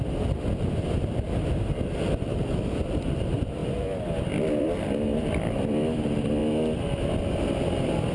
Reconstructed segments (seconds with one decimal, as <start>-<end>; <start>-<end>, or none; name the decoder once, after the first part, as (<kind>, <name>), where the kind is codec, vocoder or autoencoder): 0.0-3.6 (vocoder, BigVGAN v2); 4.6-6.4; 7.4-8.1